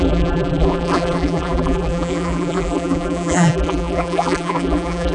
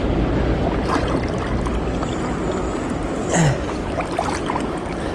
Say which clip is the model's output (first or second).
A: first